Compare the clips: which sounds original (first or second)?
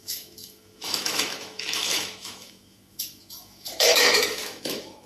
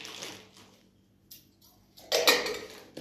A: second